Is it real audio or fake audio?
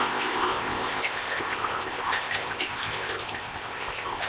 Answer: fake